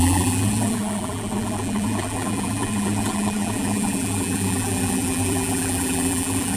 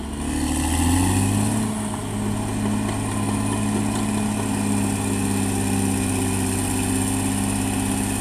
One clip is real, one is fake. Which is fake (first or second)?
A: first